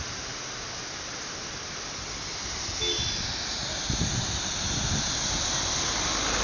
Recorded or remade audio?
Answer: recorded